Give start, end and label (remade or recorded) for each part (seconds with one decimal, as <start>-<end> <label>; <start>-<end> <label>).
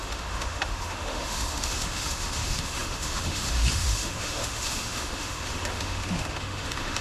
0.0-7.0 remade